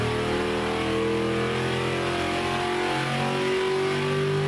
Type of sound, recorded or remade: recorded